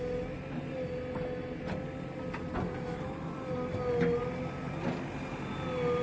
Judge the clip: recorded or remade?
recorded